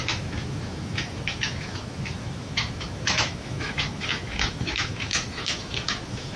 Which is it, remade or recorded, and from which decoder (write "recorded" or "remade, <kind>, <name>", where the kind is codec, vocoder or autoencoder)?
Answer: remade, autoencoder, DAC-VAE